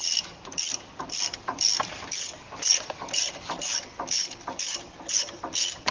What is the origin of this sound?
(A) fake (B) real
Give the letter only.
B